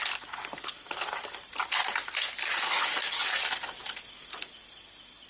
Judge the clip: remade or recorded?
recorded